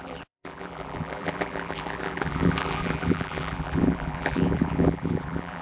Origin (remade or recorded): remade